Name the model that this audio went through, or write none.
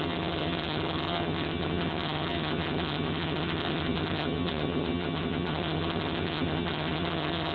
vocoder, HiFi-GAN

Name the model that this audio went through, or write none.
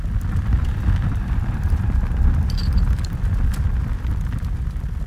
none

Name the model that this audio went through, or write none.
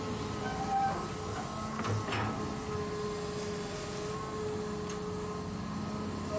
none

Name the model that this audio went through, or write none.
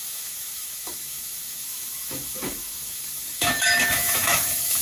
autoencoder, DAC-VAE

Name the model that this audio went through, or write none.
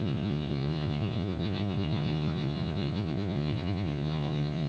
vocoder, Vocos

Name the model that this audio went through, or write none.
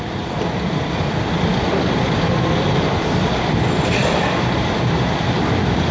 vocoder, BigVGAN v2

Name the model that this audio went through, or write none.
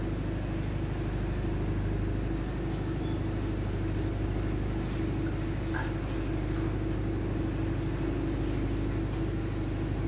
none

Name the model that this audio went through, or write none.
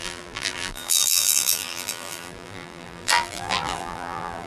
vocoder, BigVGAN v2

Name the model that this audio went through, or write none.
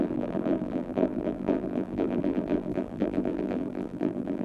vocoder, BigVGAN v2